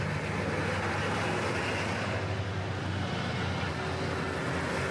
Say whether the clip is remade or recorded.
recorded